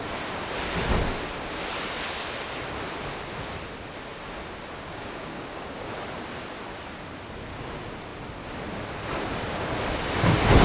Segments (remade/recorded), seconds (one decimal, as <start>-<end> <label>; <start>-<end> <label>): 0.0-4.9 recorded; 4.9-5.9 remade; 5.9-10.6 recorded